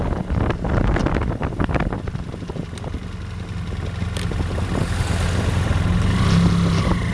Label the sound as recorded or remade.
recorded